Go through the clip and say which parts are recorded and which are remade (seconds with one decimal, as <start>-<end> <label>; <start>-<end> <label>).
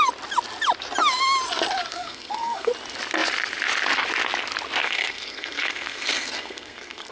0.0-1.9 recorded; 1.9-2.7 remade; 2.7-4.8 recorded; 4.8-7.1 remade